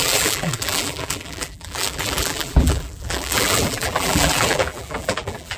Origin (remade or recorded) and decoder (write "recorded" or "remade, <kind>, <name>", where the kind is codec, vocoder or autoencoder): remade, vocoder, BigVGAN v2